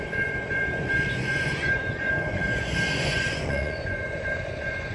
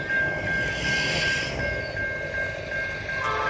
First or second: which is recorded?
second